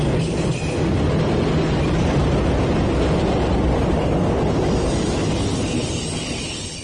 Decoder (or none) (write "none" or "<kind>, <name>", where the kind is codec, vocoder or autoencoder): none